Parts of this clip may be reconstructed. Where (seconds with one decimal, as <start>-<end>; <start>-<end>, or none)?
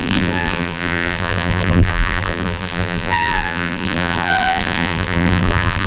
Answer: 0.0-5.9